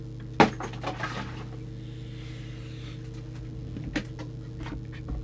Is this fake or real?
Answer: real